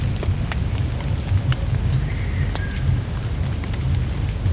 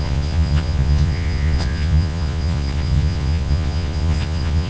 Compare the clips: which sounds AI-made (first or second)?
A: second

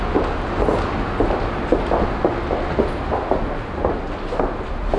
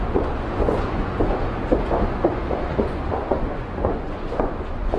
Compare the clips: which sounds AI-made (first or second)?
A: second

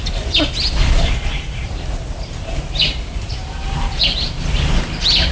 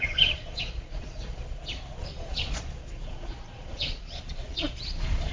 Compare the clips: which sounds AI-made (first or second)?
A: second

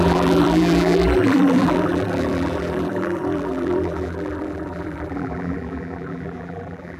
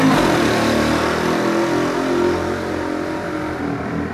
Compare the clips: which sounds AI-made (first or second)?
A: first